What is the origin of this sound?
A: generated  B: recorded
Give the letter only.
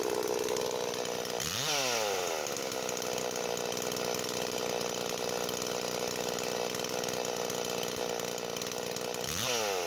B